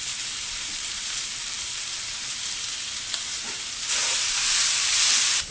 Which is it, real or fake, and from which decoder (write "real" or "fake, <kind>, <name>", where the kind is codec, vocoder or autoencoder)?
fake, vocoder, BigVGAN v2